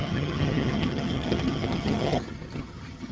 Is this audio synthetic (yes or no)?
yes